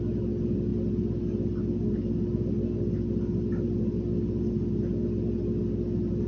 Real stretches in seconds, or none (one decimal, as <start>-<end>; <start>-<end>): 0.0-6.3